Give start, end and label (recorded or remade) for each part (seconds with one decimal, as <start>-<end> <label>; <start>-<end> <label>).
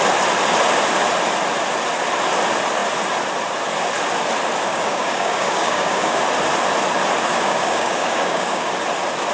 0.0-4.7 recorded; 4.7-6.2 remade; 6.2-7.3 recorded; 7.3-8.7 remade; 8.7-9.3 recorded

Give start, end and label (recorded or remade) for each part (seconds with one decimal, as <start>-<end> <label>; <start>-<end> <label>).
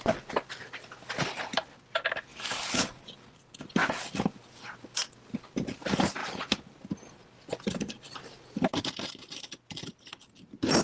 0.0-10.8 recorded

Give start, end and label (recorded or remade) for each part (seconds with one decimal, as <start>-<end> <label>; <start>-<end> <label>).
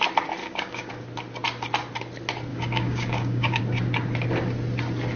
0.0-0.4 recorded; 0.4-0.9 remade; 0.9-2.5 recorded; 2.5-3.6 remade; 3.6-5.2 recorded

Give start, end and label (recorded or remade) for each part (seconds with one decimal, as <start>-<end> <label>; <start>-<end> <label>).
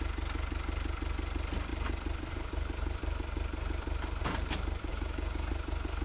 0.0-4.9 recorded; 4.9-5.5 remade; 5.5-6.0 recorded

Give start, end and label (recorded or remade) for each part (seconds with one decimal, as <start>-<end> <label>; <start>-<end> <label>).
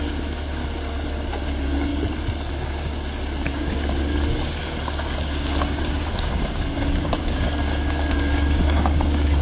0.0-0.6 remade; 0.6-1.5 recorded; 1.5-1.9 remade; 1.9-2.5 recorded; 2.5-2.9 remade; 2.9-3.5 recorded; 3.5-9.4 remade